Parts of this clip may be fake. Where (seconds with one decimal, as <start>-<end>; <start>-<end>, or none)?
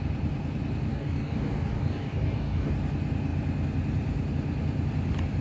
0.9-2.7